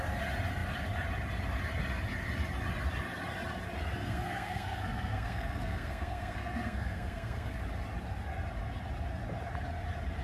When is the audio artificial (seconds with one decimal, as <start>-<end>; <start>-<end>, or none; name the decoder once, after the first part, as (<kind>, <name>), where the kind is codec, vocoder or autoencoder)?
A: 4.0-7.6 (codec, SNAC)